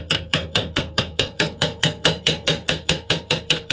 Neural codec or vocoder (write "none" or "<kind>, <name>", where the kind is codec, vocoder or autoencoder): codec, SNAC